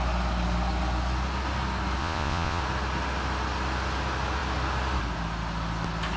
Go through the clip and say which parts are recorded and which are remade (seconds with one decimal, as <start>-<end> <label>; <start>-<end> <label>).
0.0-2.0 recorded; 2.0-2.6 remade; 2.6-6.2 recorded